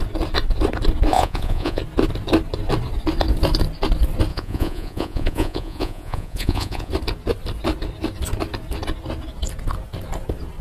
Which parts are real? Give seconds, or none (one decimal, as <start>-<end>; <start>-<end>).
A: 0.0-1.1; 1.8-4.3; 6.9-10.6